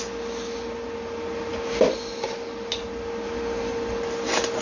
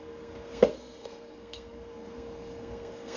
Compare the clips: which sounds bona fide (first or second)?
first